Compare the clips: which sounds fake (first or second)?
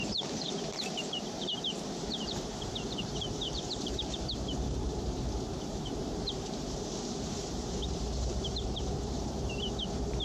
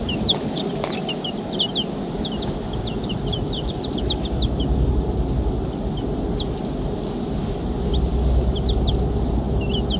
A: first